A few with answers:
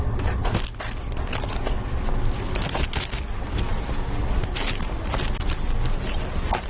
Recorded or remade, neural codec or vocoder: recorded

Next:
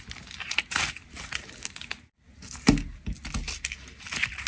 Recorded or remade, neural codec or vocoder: recorded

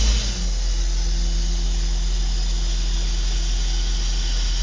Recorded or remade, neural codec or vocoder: recorded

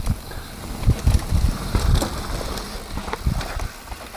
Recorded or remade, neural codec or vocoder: recorded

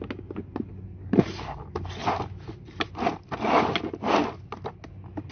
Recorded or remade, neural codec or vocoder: recorded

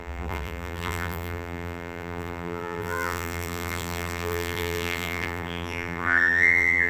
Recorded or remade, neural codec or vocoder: remade, vocoder, BigVGAN v2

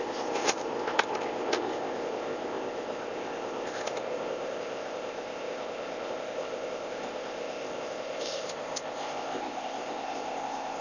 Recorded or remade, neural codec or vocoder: remade, codec, ZipCodec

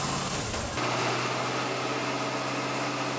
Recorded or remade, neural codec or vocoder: recorded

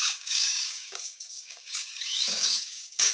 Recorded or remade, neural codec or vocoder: remade, codec, DAC